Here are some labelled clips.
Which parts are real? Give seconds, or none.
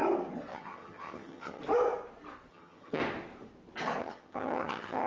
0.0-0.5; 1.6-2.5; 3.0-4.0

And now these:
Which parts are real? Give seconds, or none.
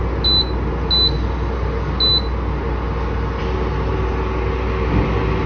0.0-5.5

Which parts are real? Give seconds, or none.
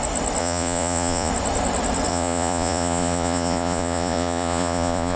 0.0-0.4; 1.3-2.1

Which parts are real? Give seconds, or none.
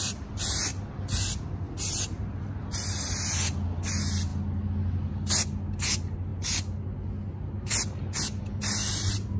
0.0-9.4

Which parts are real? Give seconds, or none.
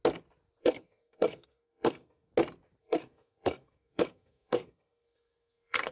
0.0-0.6; 2.3-2.8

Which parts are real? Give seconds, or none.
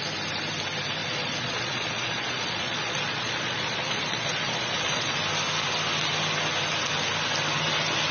0.0-1.0; 5.2-8.1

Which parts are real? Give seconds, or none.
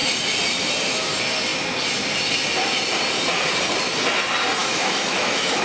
0.0-4.6